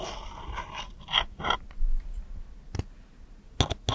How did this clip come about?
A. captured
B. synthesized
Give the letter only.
A